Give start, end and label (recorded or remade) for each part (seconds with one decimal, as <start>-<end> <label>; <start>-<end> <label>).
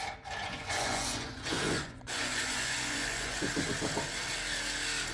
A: 0.0-0.4 recorded; 0.4-3.5 remade; 3.5-5.1 recorded